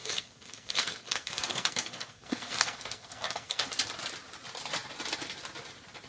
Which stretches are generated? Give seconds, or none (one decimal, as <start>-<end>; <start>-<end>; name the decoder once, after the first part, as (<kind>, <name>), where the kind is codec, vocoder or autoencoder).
0.0-3.7 (codec, SNAC)

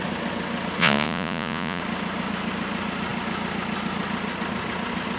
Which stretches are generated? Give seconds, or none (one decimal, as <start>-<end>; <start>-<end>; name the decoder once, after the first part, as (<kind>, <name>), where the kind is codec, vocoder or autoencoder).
0.8-1.8 (vocoder, Vocos)

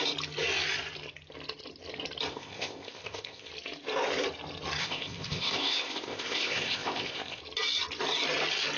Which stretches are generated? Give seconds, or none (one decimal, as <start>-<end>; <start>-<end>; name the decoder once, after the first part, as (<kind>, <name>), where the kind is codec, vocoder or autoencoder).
2.3-3.5 (codec, ZipCodec); 4.8-7.4